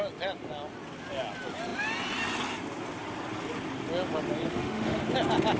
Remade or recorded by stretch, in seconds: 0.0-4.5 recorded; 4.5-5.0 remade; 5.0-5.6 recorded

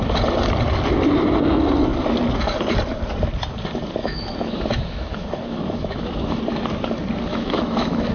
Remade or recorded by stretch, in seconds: 0.0-4.0 recorded; 4.0-6.4 remade; 6.4-7.3 recorded; 7.3-8.1 remade

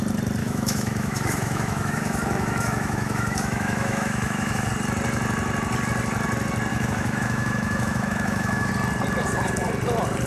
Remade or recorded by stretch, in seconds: 0.0-0.4 recorded; 0.4-4.7 remade; 4.7-6.7 recorded; 6.7-8.7 remade; 8.7-10.3 recorded